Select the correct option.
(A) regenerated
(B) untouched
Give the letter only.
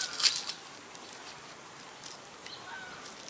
B